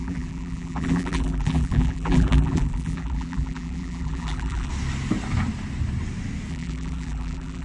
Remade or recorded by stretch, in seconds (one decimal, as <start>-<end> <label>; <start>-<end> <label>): 0.0-4.7 remade; 4.7-6.5 recorded; 6.5-7.6 remade